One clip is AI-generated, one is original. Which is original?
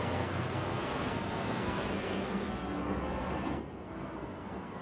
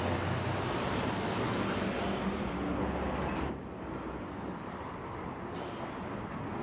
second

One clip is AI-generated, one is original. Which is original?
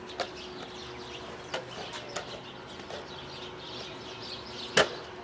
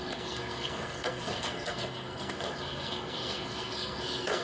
first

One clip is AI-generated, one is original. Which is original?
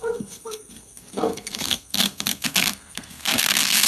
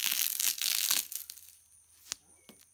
second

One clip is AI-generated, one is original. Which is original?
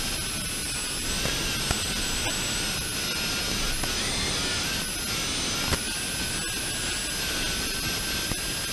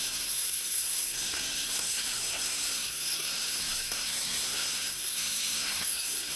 first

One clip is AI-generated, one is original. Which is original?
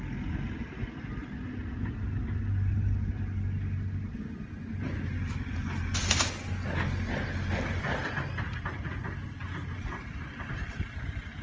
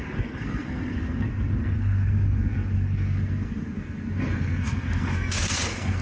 first